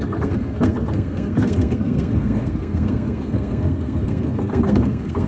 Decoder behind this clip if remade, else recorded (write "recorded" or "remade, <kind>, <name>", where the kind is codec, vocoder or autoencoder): remade, codec, SNAC